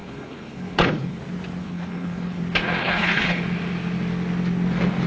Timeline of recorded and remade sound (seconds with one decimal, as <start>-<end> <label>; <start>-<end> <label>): 0.0-1.2 remade; 1.2-1.6 recorded; 1.6-2.4 remade; 2.4-2.8 recorded; 2.8-3.4 remade; 3.4-5.1 recorded